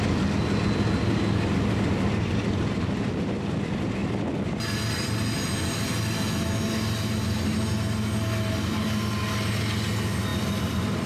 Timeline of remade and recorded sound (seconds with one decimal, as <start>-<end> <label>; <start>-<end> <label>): 0.0-10.3 recorded; 10.3-11.1 remade